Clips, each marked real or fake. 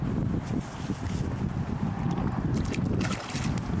real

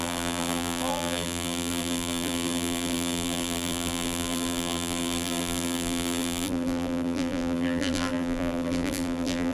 fake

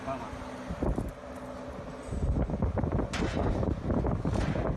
real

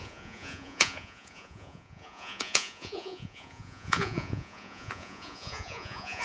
fake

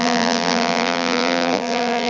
fake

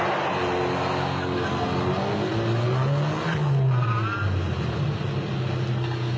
real